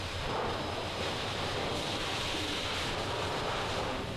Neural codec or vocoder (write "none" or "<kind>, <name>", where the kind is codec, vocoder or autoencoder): vocoder, BigVGAN v2